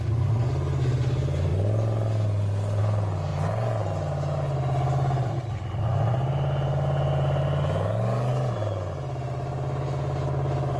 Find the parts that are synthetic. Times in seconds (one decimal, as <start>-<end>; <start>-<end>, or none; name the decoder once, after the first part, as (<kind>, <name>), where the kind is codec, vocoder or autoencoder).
none